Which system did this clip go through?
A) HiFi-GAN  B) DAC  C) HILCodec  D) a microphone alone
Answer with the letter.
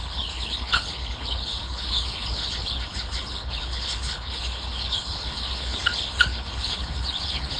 C